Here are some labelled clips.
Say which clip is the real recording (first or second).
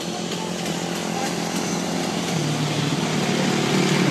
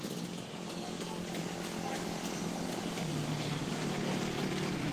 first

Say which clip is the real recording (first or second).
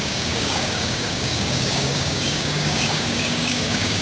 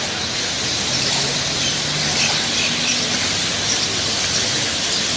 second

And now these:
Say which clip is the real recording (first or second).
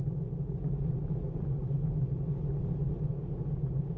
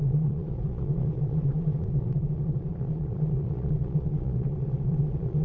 first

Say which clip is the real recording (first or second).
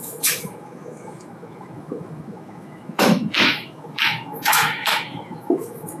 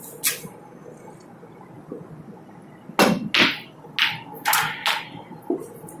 second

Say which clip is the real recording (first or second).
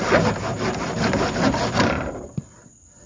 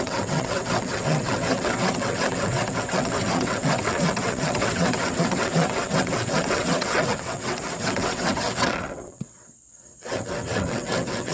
first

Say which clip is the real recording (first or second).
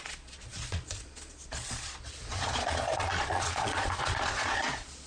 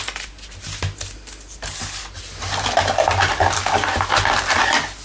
second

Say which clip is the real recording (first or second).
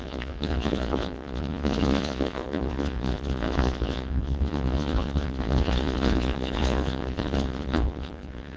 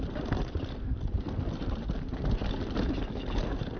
second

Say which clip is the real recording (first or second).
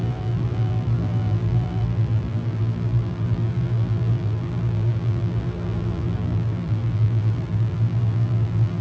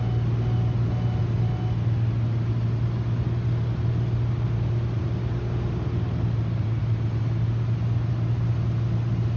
second